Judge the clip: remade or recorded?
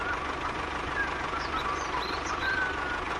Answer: remade